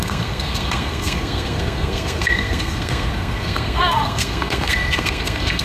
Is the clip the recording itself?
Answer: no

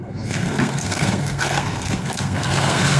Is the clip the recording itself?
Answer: no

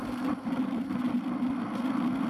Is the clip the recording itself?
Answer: yes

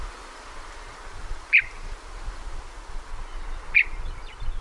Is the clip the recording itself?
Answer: yes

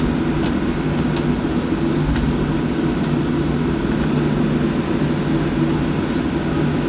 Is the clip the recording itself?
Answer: yes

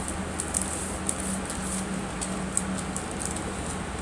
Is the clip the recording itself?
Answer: yes